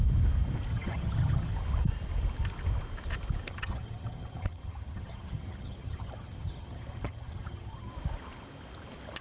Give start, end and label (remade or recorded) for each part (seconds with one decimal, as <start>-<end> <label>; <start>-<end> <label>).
0.0-0.7 recorded; 0.7-1.5 remade; 1.5-3.5 recorded; 3.5-7.9 remade; 7.9-9.2 recorded